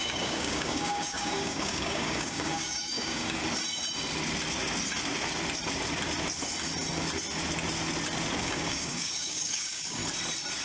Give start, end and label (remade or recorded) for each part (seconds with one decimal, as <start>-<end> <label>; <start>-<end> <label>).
0.0-3.4 remade; 3.4-8.4 recorded; 8.4-10.0 remade; 10.0-10.6 recorded